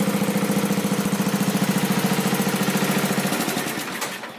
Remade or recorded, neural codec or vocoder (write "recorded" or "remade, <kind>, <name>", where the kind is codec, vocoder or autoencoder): recorded